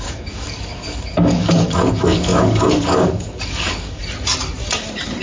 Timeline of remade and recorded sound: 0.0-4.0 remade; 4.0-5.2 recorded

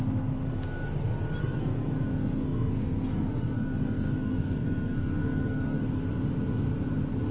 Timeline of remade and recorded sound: 0.0-1.4 recorded; 1.4-5.8 remade; 5.8-7.3 recorded

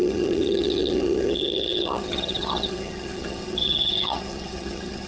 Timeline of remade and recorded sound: 0.0-5.1 remade

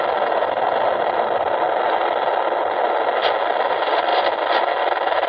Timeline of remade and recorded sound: 0.0-5.3 recorded

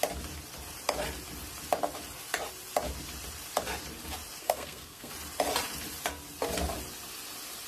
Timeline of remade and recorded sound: 0.0-4.4 recorded; 4.4-5.1 remade; 5.1-7.7 recorded